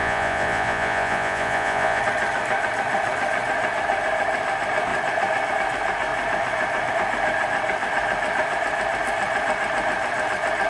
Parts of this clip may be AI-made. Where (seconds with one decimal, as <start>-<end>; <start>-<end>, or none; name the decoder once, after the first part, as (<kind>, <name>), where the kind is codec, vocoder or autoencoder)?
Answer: 0.0-2.0 (vocoder, Vocos)